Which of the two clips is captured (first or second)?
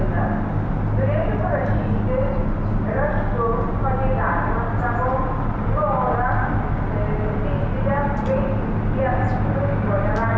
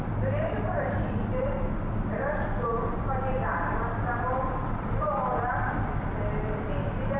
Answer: first